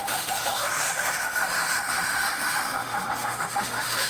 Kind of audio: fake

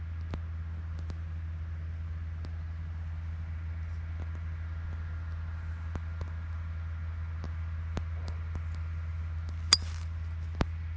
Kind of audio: real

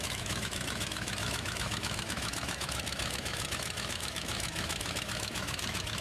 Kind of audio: fake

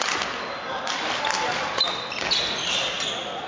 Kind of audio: real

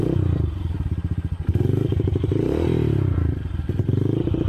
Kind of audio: real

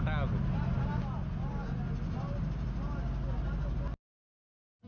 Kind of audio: real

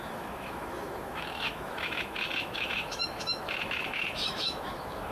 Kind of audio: fake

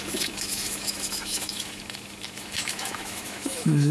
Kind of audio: fake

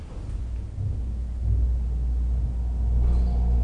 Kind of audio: real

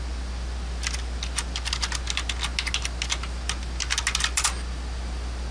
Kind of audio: real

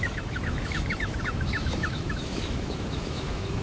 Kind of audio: fake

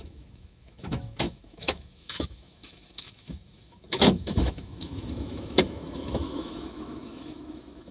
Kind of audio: fake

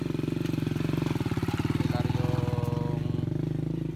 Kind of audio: real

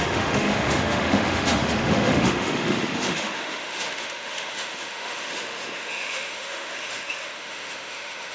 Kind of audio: fake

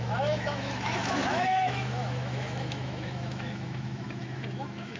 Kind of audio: fake